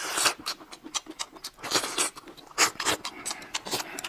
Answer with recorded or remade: recorded